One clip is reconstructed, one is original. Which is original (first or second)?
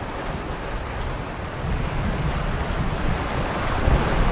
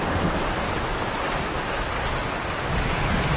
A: second